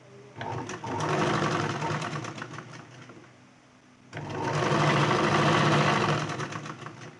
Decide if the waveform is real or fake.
real